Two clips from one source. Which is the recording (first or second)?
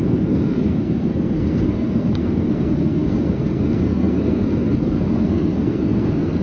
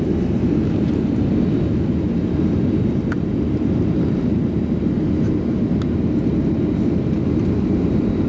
second